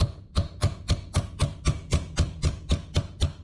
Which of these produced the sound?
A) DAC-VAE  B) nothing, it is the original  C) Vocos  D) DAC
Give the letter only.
B